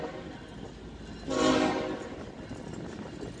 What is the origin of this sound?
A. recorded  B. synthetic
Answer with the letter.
A